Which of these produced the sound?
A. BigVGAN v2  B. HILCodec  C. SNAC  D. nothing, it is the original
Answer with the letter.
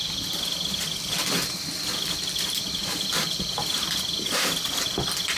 A